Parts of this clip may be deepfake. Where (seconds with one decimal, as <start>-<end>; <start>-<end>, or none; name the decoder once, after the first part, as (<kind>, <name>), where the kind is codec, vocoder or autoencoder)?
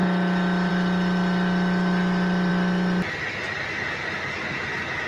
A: none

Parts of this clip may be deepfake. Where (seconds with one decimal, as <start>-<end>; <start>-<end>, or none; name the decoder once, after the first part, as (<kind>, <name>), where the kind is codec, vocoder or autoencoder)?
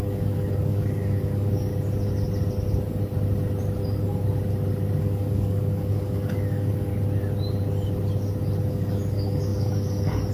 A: 0.0-1.7 (codec, DAC); 5.0-6.9; 8.7-10.3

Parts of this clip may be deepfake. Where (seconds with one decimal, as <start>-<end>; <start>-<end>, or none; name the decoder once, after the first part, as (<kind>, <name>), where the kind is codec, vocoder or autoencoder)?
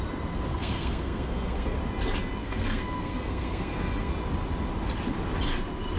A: 0.5-1.8 (codec, SNAC); 2.4-4.1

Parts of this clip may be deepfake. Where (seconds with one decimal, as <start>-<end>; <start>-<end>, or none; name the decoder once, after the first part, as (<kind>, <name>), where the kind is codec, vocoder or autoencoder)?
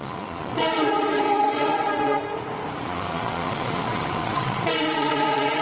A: 0.0-2.2 (vocoder, Vocos); 2.8-5.6